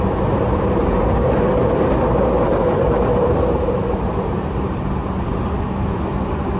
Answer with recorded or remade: remade